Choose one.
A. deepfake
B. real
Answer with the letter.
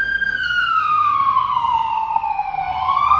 A